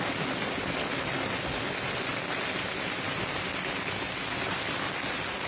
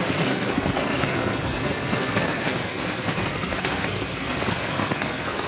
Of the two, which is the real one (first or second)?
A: first